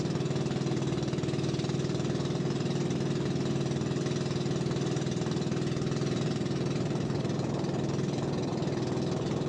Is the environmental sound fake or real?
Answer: real